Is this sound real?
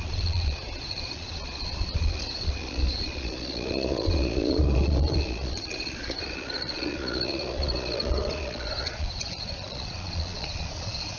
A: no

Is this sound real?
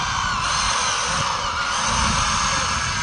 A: yes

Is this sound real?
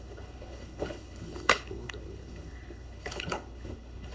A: no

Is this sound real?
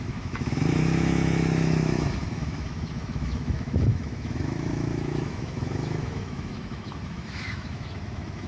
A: no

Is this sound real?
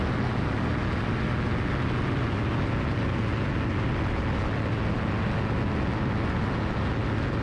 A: yes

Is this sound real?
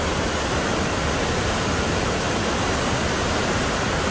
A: yes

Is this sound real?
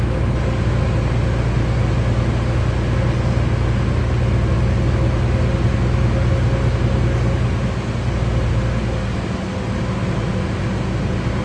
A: yes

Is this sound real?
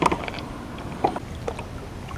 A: yes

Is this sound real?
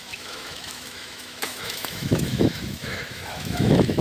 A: no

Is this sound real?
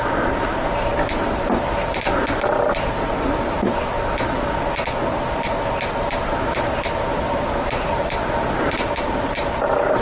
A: yes